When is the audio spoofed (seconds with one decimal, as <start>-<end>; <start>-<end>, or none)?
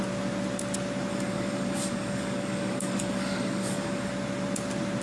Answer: 1.1-4.1